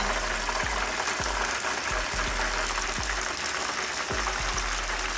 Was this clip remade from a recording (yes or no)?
no